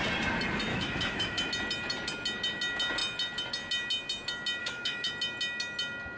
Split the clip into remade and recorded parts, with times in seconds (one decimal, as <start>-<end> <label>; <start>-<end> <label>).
0.0-0.7 recorded; 0.7-1.5 remade; 1.5-4.6 recorded; 4.6-5.1 remade; 5.1-6.2 recorded